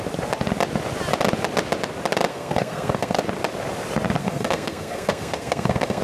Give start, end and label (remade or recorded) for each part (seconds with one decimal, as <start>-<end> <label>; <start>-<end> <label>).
0.0-2.3 recorded; 2.3-3.2 remade; 3.2-4.2 recorded; 4.2-6.0 remade

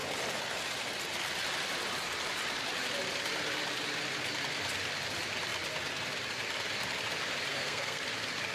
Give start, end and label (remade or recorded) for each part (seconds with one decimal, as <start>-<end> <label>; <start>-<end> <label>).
0.0-7.5 recorded; 7.5-8.0 remade; 8.0-8.5 recorded

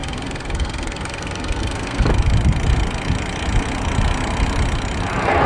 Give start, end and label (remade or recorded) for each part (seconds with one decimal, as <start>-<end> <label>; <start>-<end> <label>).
0.0-2.1 remade; 2.1-5.5 recorded